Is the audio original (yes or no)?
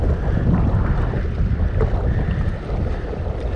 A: yes